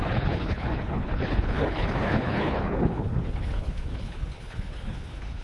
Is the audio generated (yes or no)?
yes